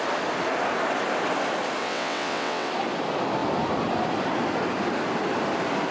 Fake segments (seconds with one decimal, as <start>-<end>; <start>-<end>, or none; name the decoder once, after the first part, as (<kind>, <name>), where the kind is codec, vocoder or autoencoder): 1.8-2.7 (vocoder, WaveNeXt)